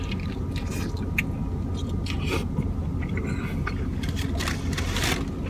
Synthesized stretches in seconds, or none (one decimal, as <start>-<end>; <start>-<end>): none